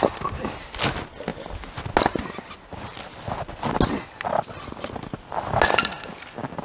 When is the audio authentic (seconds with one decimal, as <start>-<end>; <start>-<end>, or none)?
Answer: 0.0-6.6